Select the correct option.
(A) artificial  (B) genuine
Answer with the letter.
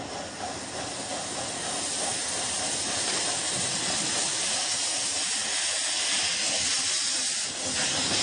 B